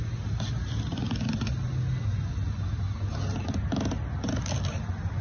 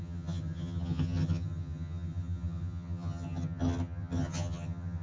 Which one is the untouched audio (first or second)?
first